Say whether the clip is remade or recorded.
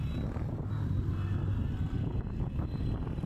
recorded